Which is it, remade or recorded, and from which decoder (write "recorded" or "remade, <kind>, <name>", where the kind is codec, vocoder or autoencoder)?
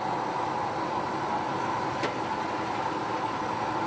recorded